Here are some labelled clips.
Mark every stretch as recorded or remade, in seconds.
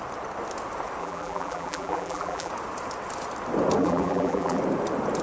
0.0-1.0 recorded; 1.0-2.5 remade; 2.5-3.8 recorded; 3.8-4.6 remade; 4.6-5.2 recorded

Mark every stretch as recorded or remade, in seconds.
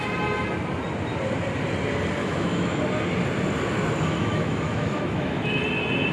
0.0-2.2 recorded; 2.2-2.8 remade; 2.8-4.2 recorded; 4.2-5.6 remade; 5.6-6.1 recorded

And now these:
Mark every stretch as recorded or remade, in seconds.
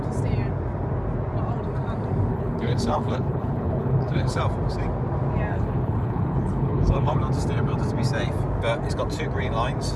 0.0-2.3 recorded; 2.3-4.4 remade; 4.4-5.5 recorded; 5.5-7.2 remade; 7.2-10.0 recorded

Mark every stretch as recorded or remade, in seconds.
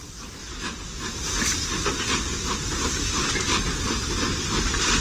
0.0-5.0 recorded